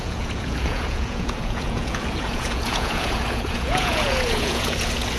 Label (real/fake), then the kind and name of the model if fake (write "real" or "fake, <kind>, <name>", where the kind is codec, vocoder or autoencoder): fake, vocoder, Vocos